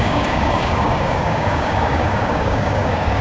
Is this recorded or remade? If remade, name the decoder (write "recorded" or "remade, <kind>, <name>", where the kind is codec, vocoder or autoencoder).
remade, codec, DAC